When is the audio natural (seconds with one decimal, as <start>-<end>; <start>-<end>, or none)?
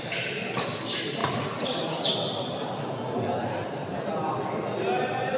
0.0-5.4